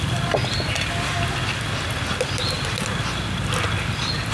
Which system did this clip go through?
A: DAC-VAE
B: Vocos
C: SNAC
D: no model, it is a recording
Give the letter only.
D